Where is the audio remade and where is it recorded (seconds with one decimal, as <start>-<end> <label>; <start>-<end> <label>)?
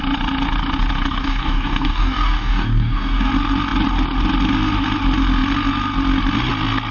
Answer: 0.0-1.2 recorded; 1.2-3.3 remade; 3.3-6.9 recorded